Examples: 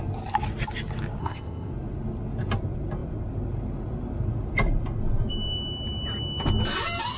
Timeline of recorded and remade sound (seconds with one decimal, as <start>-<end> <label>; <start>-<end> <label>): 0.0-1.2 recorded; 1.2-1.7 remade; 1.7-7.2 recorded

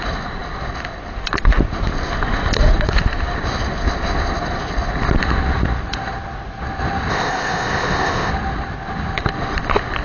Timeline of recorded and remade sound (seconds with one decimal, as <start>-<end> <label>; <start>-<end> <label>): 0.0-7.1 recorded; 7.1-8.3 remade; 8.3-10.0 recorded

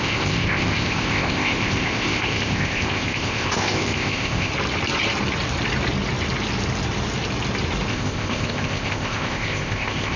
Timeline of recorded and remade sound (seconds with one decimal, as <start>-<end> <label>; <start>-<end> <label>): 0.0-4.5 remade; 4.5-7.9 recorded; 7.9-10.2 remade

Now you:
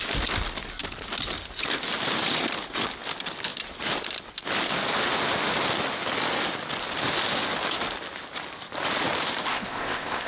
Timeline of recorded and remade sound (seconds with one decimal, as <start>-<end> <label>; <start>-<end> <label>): 0.0-9.5 recorded; 9.5-10.3 remade